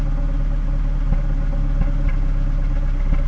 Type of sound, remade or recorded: recorded